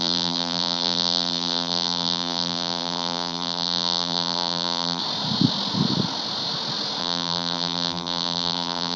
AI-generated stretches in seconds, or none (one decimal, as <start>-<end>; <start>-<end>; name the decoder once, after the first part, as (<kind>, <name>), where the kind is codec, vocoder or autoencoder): 0.0-5.0 (vocoder, BigVGAN v2); 7.0-9.0